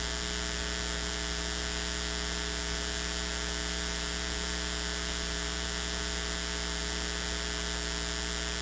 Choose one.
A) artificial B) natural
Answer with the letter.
B